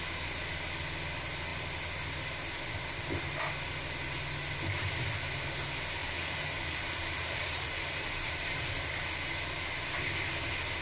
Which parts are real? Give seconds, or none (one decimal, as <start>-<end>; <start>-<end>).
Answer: 0.0-6.0; 9.1-10.8